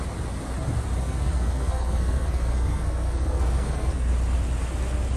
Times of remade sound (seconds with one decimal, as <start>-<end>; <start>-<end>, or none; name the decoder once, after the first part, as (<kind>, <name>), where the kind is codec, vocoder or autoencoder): 1.0-4.1 (codec, SNAC)